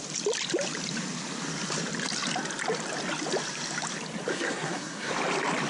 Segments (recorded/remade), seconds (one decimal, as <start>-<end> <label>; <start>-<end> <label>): 0.0-4.3 recorded; 4.3-5.1 remade; 5.1-5.7 recorded